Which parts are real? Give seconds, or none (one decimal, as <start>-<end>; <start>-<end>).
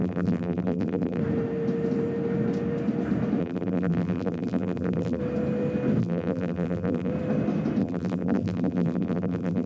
1.2-3.4; 5.2-6.0; 7.1-7.8